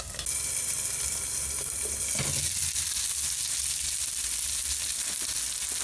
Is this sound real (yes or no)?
yes